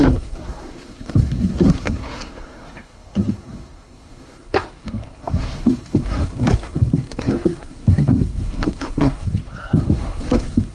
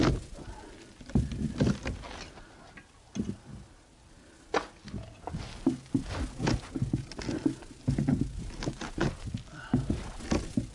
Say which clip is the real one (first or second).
second